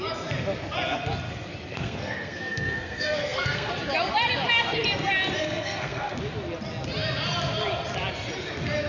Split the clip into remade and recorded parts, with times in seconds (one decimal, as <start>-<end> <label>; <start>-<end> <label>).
0.0-1.7 recorded; 1.7-3.7 remade; 3.7-5.4 recorded; 5.4-6.2 remade; 6.2-8.9 recorded